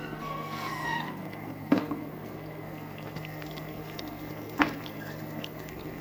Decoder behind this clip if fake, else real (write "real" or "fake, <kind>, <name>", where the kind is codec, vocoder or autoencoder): fake, codec, SNAC